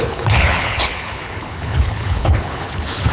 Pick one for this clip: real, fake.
fake